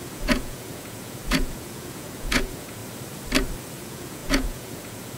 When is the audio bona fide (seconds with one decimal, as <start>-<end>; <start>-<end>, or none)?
2.8-3.8